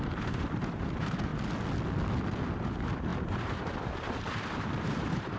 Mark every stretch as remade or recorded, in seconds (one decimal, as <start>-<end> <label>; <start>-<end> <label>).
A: 0.0-1.3 remade; 1.3-2.5 recorded; 2.5-5.4 remade